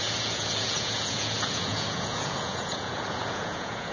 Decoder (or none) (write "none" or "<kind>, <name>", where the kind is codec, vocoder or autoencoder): vocoder, Vocos